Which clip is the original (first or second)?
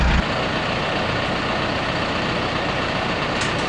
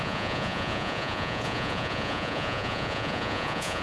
first